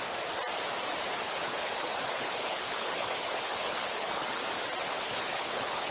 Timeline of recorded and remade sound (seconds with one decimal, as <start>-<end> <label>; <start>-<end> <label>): 0.0-1.2 recorded; 1.2-4.4 remade; 4.4-4.9 recorded; 4.9-5.9 remade